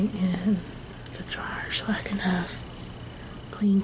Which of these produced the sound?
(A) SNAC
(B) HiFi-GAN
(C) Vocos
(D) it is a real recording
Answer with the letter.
D